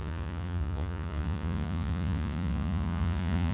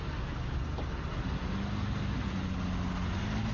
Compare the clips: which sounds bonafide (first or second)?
second